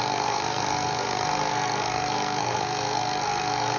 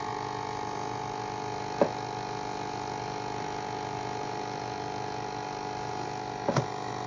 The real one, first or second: second